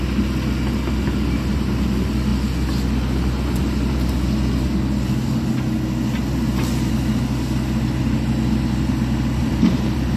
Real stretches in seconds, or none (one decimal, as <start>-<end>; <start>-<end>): 0.0-9.4